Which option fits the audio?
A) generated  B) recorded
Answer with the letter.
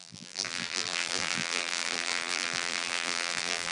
A